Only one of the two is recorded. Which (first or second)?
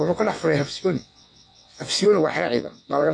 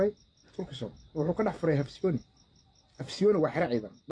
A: second